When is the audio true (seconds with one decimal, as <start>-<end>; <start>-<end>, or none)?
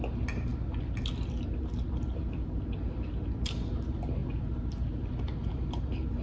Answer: 0.0-6.2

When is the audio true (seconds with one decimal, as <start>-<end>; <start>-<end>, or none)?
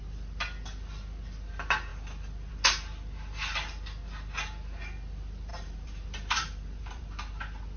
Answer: 0.0-5.5; 7.1-7.8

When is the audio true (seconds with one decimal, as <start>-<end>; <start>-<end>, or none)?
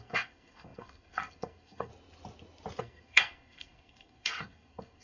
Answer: 1.9-2.8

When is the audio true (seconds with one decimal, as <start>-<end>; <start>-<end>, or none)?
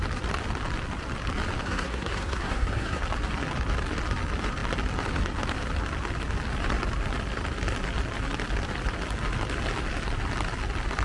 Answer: 0.0-1.6; 3.0-11.0